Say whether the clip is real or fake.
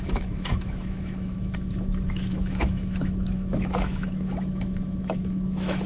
fake